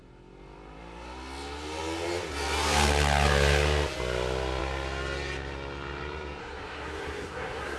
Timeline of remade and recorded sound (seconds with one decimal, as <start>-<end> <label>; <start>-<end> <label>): 0.0-6.4 recorded; 6.4-7.8 remade